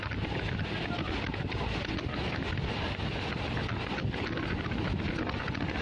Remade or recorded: recorded